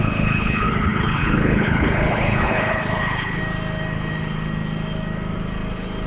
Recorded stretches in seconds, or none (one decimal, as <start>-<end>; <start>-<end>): 3.4-6.1